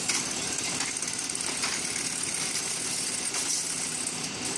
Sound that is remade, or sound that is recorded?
recorded